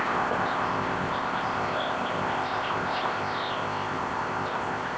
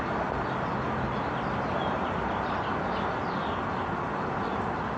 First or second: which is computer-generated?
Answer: first